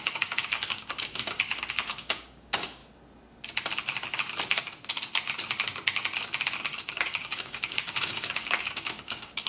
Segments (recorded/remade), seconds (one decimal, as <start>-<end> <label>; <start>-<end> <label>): 0.0-2.8 remade; 2.8-6.9 recorded; 6.9-9.5 remade